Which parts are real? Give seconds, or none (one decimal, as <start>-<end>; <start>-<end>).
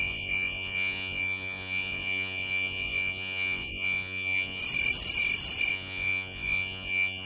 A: 4.6-5.7